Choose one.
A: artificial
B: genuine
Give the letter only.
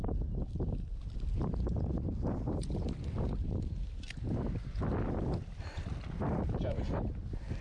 B